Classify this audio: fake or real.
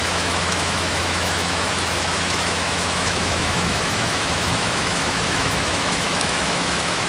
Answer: fake